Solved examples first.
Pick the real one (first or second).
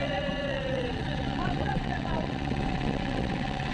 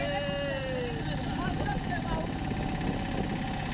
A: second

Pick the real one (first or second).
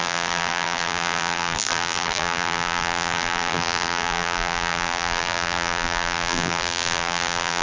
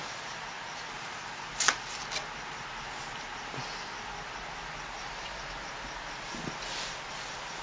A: second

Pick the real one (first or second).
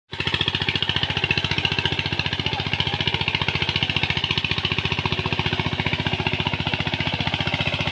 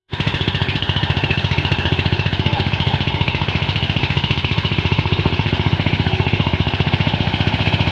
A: first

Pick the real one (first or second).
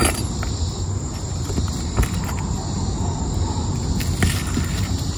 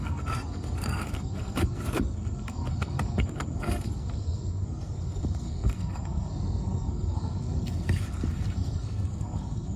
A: first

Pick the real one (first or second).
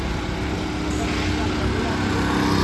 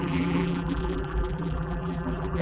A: first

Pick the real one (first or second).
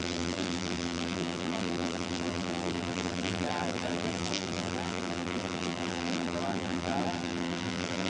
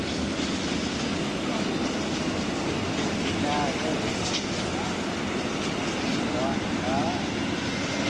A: second